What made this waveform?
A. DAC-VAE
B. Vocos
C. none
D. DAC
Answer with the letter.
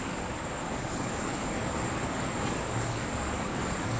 D